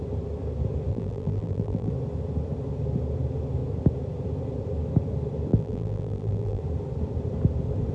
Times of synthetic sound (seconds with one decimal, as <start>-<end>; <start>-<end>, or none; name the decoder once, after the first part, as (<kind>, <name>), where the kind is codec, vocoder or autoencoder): 0.9-1.9 (vocoder, BigVGAN v2); 5.5-6.6